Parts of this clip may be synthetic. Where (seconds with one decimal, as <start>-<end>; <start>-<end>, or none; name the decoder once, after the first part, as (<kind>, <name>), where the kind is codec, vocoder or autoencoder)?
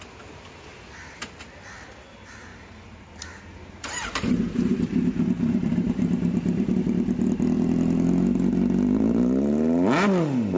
2.5-6.8 (vocoder, BigVGAN v2)